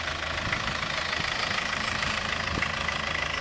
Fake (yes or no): no